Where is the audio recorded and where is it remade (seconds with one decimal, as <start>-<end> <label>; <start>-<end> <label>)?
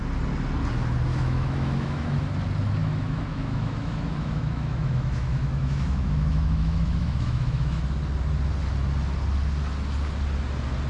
0.0-1.1 recorded; 1.1-2.2 remade; 2.2-2.8 recorded; 2.8-7.8 remade; 7.8-10.9 recorded